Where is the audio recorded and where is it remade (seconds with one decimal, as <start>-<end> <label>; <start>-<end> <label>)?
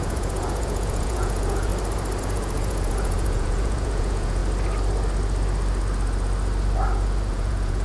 0.0-1.7 remade; 1.7-2.2 recorded; 2.2-4.4 remade; 4.4-7.3 recorded; 7.3-7.8 remade